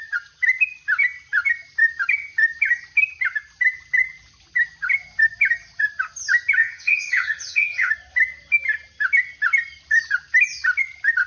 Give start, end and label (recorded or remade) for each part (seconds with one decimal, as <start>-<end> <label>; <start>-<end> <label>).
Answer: 0.0-6.6 recorded; 6.6-7.9 remade; 7.9-11.3 recorded